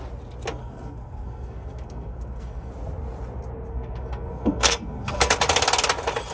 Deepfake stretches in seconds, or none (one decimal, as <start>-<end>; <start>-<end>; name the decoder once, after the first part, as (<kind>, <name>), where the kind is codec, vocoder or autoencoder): 0.6-2.7 (codec, SNAC); 3.7-5.3